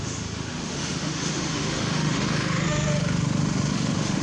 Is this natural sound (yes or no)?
no